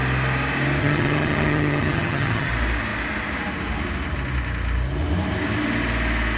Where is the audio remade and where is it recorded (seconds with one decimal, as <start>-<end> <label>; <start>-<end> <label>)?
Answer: 0.0-0.8 recorded; 0.8-2.5 remade; 2.5-6.4 recorded